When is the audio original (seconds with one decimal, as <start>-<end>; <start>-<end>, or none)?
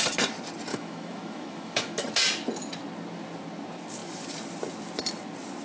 0.0-0.7; 2.1-5.6